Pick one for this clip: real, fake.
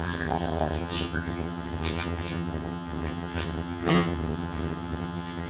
fake